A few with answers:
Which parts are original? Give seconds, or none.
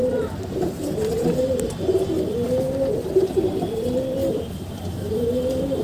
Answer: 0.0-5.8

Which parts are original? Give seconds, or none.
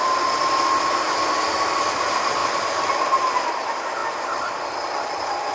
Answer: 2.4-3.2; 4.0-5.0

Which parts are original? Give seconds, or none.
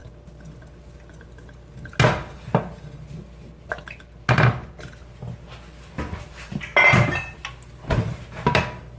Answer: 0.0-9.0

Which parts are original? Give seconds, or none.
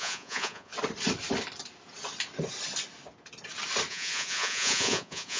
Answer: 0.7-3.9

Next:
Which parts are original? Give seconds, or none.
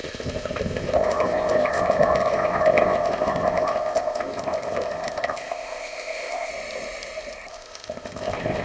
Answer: 6.5-7.5